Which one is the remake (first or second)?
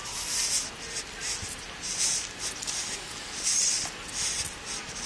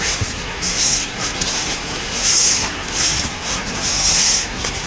second